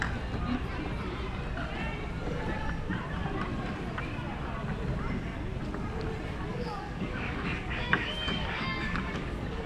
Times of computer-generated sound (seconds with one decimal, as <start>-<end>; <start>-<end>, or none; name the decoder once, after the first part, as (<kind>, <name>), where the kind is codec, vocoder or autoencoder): 6.5-9.7 (codec, DAC)